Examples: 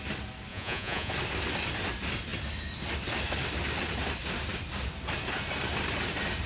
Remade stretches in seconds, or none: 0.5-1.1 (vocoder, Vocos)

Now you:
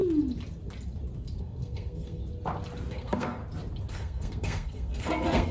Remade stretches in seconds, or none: 1.4-2.2 (codec, SNAC); 2.9-3.4; 3.9-5.5